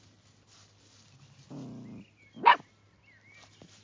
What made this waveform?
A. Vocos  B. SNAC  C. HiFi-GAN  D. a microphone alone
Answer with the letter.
D